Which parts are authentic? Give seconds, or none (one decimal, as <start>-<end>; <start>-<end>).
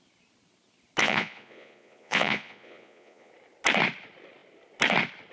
0.0-1.0; 3.3-5.3